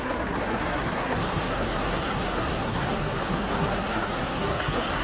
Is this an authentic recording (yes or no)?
no